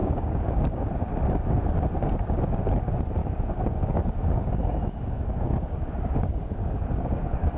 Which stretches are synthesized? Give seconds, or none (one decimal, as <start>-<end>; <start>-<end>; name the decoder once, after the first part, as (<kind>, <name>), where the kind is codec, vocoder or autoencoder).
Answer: 0.0-0.8 (codec, DAC); 3.2-7.6